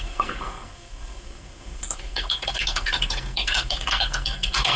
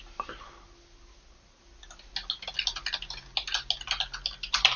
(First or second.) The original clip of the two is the second